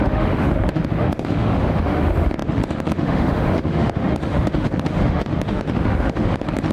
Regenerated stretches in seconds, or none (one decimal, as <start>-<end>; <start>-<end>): 0.0-6.7